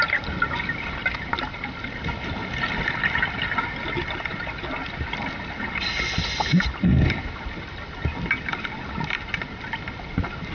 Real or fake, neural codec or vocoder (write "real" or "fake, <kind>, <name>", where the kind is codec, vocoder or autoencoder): real